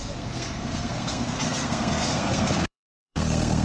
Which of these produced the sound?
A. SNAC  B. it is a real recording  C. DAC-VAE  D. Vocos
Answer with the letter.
A